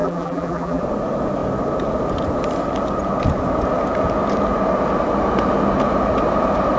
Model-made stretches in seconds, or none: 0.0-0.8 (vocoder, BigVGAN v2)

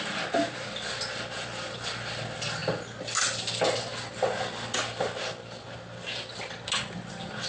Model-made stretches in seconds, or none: none

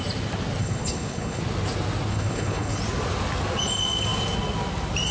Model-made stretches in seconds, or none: 0.6-1.4 (codec, HILCodec); 2.1-2.8

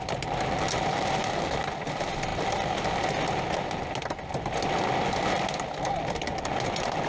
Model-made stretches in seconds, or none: none

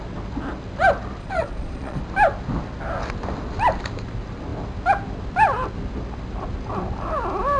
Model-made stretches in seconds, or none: 1.2-2.0 (vocoder, Vocos)

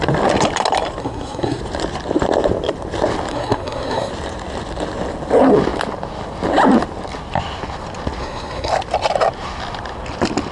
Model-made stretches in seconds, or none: 1.0-1.6 (codec, SNAC); 3.3-4.1; 8.2-8.7

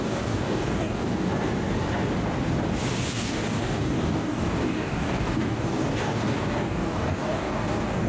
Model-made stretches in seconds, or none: 0.0-1.3 (codec, DAC); 3.1-8.1